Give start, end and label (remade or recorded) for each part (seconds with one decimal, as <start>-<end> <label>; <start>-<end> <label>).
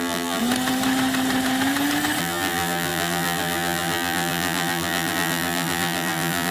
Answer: 0.0-0.4 remade; 0.4-2.2 recorded; 2.2-6.5 remade